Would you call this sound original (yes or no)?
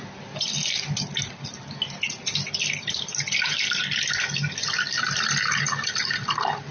yes